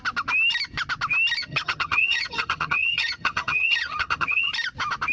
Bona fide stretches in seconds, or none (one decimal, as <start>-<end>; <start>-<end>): 0.0-1.4; 4.5-5.1